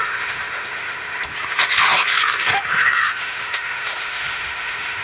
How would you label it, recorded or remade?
remade